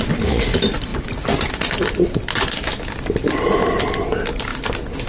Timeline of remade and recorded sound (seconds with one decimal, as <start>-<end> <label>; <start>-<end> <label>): 0.0-5.1 recorded